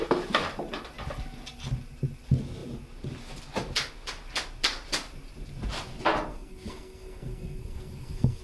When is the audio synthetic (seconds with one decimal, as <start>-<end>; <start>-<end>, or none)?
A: 6.3-8.4